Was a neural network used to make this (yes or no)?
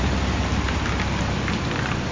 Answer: no